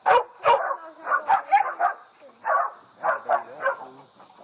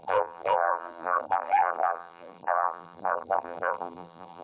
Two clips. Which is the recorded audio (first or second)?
first